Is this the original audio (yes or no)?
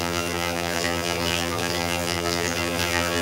no